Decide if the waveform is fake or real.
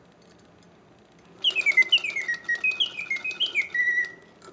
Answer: real